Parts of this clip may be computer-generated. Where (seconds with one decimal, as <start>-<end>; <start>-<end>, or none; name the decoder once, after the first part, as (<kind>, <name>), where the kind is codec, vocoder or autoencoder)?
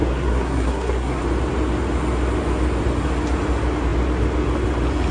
0.0-1.2 (codec, SNAC)